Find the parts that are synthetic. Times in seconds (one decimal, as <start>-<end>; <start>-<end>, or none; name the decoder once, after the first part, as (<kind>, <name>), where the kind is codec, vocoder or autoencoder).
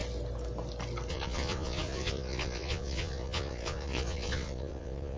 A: 1.1-5.2 (vocoder, Vocos)